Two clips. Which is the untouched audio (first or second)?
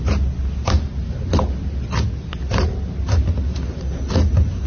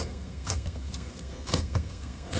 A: first